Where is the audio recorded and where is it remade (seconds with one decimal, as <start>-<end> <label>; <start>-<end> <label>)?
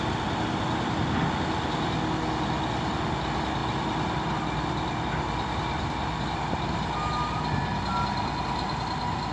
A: 0.0-9.3 recorded